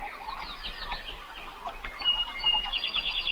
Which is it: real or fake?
real